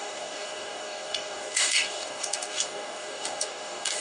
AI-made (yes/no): yes